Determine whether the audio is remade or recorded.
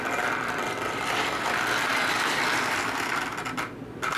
recorded